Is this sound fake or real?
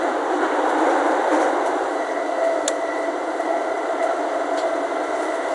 real